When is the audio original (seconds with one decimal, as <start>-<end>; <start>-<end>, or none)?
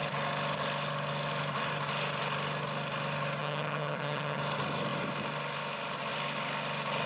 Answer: 0.0-3.4; 4.4-7.1